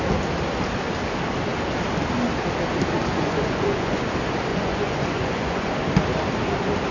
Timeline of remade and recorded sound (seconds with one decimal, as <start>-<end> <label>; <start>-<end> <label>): 0.0-3.1 recorded; 3.1-4.0 remade; 4.0-4.5 recorded; 4.5-5.7 remade; 5.7-6.9 recorded